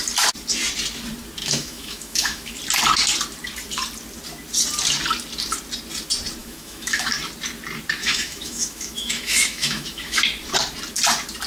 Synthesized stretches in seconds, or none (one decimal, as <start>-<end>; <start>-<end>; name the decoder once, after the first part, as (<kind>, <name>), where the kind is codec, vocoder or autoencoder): 1.4-2.6 (autoencoder, DAC-VAE); 6.4-7.1; 8.0-10.2